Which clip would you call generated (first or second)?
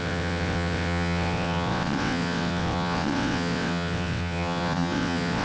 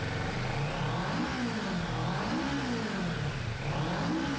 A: first